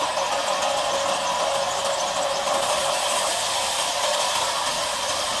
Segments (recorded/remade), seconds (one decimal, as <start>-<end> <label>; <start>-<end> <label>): 0.0-5.4 recorded